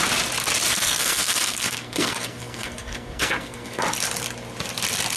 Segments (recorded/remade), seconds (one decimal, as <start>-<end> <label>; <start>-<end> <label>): 0.0-0.7 recorded; 0.7-3.8 remade; 3.8-5.2 recorded